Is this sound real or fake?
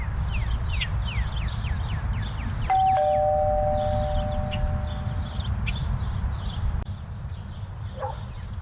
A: real